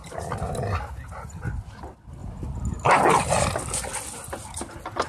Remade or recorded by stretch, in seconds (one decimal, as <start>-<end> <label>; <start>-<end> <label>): 0.0-5.1 recorded